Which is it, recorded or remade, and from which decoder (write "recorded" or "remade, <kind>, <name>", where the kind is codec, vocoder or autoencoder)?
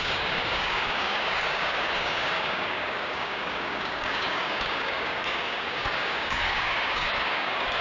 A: remade, codec, DAC